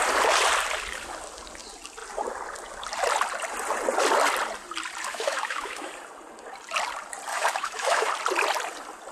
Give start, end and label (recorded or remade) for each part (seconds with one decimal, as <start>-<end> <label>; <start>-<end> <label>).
0.0-5.1 recorded; 5.1-5.9 remade; 5.9-7.3 recorded; 7.3-8.1 remade; 8.1-9.1 recorded